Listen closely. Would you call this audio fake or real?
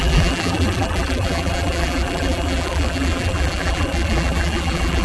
fake